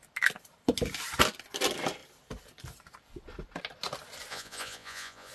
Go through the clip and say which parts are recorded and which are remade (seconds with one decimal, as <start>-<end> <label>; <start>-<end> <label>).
0.0-4.3 recorded; 4.3-5.3 remade